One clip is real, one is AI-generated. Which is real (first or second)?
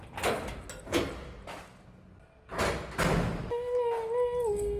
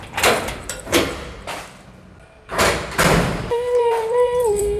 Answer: first